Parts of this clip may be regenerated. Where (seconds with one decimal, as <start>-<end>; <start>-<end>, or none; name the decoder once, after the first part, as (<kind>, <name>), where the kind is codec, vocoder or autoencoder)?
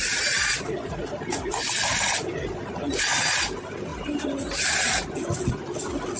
none